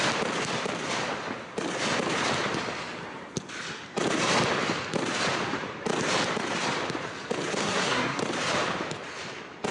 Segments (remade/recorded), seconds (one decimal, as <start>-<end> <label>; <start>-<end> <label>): 0.0-7.6 recorded; 7.6-8.2 remade; 8.2-9.7 recorded